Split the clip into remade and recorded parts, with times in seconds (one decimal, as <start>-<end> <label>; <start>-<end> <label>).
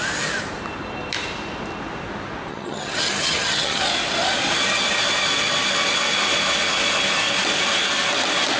0.0-2.5 recorded; 2.5-3.8 remade; 3.8-8.6 recorded